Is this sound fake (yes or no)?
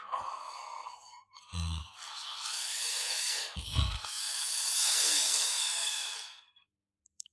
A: yes